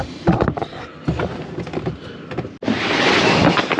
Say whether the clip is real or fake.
real